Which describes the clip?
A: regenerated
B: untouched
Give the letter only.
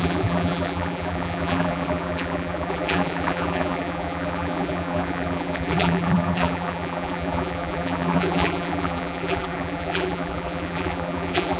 A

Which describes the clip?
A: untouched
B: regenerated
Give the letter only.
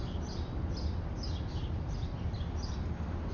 A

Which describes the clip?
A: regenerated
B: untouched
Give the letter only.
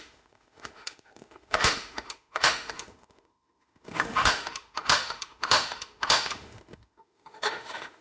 A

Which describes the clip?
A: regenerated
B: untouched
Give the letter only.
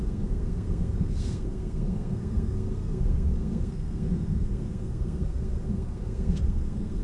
A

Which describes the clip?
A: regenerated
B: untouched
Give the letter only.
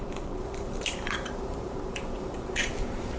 A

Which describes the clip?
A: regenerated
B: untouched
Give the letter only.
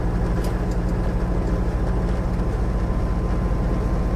B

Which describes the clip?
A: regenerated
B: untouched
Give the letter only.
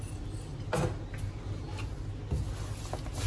B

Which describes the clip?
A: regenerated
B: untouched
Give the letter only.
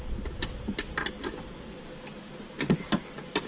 B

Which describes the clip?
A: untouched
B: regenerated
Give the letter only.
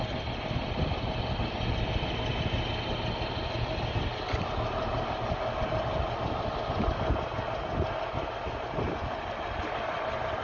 A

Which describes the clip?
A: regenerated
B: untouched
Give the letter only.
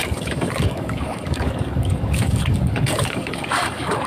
A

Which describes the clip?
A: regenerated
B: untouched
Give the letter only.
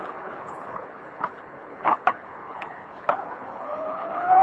A